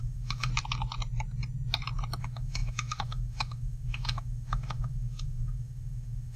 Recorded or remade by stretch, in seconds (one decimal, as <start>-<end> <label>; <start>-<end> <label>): 0.0-0.5 remade; 0.5-2.2 recorded; 2.2-6.4 remade